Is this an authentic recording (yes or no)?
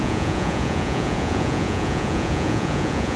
no